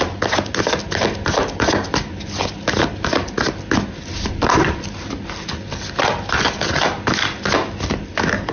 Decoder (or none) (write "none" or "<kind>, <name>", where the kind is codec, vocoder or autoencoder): none